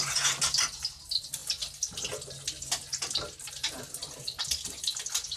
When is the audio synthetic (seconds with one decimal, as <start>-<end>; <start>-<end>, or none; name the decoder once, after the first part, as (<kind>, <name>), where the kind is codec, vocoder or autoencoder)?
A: none